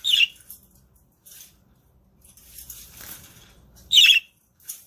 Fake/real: fake